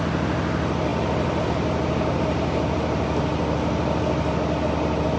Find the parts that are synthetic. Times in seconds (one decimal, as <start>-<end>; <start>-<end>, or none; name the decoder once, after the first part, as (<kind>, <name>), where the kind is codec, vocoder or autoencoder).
none